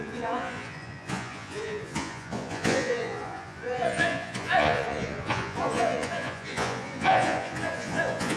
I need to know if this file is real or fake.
fake